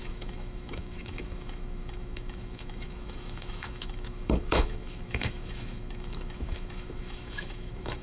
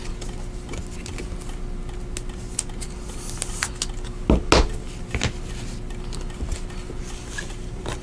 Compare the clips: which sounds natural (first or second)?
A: second